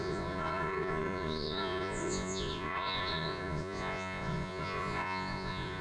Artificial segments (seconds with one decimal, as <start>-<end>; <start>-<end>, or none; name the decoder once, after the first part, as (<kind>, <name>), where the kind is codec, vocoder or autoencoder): 0.0-5.8 (vocoder, Vocos)